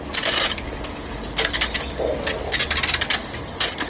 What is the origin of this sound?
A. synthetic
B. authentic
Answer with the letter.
B